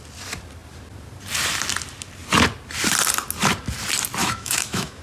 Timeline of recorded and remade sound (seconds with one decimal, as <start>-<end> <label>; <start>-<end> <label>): 0.0-4.2 recorded; 4.2-5.0 remade